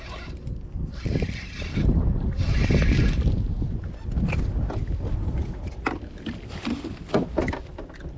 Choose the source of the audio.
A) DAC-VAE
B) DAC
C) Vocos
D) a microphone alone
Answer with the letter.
D